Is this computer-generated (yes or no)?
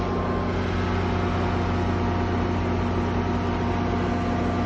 no